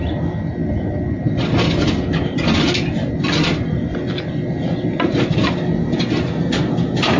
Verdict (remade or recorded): recorded